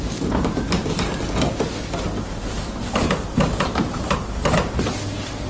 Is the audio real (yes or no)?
yes